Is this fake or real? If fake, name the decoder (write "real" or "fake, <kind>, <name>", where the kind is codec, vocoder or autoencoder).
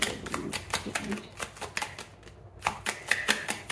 real